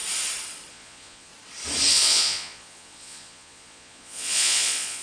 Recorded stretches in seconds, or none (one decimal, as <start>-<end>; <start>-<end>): 0.0-0.7; 1.3-1.9